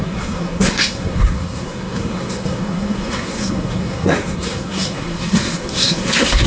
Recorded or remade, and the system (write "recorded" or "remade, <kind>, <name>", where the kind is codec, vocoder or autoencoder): remade, codec, SNAC